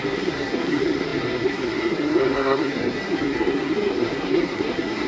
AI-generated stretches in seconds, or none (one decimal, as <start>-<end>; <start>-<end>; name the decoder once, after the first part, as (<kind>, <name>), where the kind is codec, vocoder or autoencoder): 0.0-5.1 (codec, SNAC)